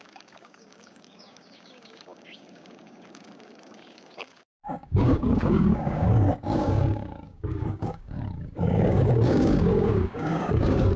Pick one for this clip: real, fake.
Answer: fake